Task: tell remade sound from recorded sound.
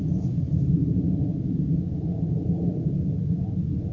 remade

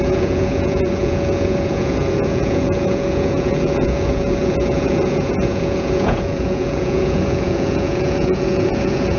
remade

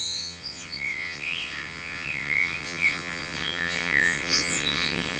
remade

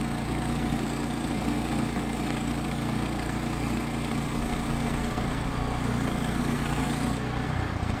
remade